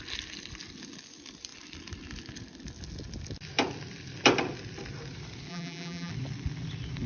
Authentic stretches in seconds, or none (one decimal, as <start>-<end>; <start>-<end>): 0.0-5.5; 6.1-7.1